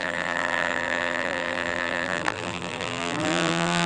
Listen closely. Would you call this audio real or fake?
fake